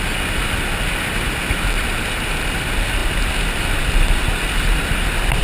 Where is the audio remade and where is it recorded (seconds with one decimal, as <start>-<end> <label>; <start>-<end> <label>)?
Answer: 0.0-5.4 recorded